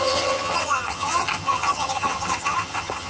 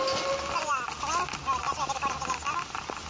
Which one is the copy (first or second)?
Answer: first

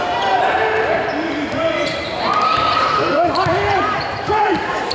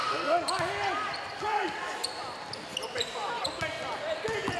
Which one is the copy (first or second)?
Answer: first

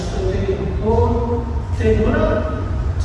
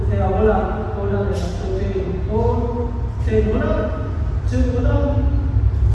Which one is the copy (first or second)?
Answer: first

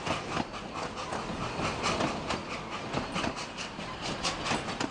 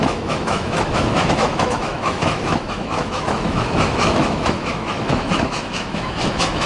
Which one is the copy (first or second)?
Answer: second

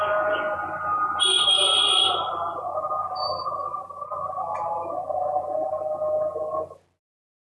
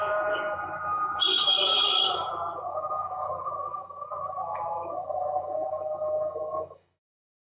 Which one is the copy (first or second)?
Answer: second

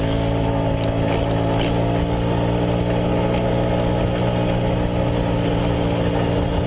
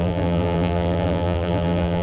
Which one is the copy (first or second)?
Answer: second